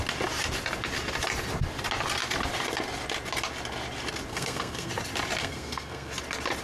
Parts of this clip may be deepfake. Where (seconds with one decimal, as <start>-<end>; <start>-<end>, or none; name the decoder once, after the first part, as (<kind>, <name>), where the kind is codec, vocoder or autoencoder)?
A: 4.3-4.9 (codec, SNAC); 5.4-6.1